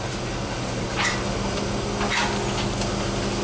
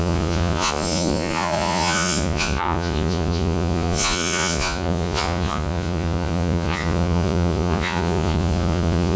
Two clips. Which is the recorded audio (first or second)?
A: first